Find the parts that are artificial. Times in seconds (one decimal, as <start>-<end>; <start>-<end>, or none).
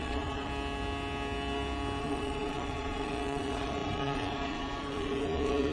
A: 0.0-0.5; 2.0-5.7